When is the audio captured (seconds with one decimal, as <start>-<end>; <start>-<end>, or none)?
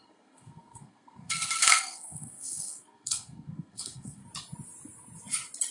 4.2-5.7